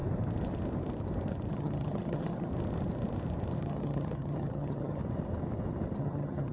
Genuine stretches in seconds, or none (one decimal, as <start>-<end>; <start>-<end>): 0.0-1.5; 2.5-3.6; 5.0-6.0